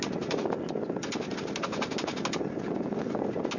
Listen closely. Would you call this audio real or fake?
real